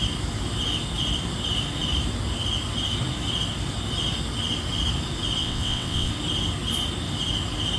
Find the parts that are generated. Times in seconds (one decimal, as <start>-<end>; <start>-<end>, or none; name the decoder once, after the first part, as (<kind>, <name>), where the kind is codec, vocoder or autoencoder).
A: 5.4-6.1 (vocoder, WaveNeXt)